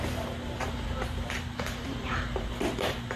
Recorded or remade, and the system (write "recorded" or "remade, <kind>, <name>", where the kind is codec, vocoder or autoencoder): remade, vocoder, BigVGAN v2